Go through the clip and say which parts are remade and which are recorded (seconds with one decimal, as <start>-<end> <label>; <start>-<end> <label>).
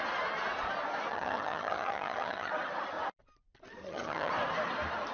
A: 0.0-1.1 recorded; 1.1-2.5 remade; 2.5-3.8 recorded; 3.8-4.3 remade; 4.3-5.1 recorded